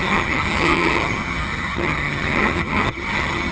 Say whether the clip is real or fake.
fake